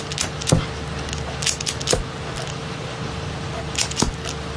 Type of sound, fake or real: real